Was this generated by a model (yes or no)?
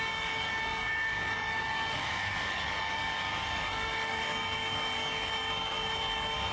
yes